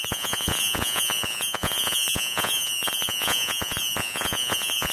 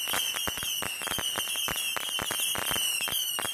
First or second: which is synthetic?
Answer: first